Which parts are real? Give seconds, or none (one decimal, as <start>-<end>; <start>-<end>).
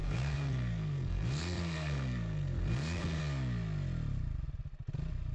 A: 3.2-5.3